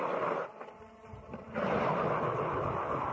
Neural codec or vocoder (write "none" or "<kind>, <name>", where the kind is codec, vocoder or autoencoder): none